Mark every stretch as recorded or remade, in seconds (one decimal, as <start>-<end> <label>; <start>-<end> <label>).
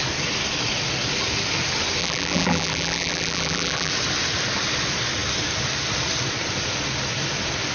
0.0-2.0 recorded; 2.0-3.9 remade; 3.9-7.7 recorded